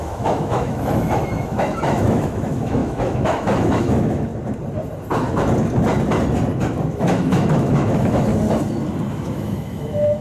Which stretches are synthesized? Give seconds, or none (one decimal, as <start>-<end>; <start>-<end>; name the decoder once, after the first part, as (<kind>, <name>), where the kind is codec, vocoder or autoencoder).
0.0-4.3 (autoencoder, DAC-VAE); 6.9-8.3; 9.1-10.2